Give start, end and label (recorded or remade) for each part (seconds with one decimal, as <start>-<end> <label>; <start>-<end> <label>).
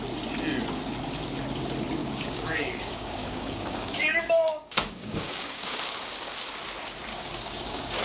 0.0-2.0 recorded; 2.0-6.3 remade; 6.3-7.1 recorded; 7.1-8.0 remade